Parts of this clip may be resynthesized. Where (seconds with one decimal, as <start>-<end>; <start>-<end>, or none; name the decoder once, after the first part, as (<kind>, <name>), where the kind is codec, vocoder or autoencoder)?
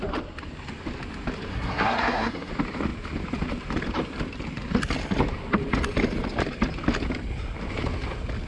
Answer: 1.5-2.5 (codec, SNAC)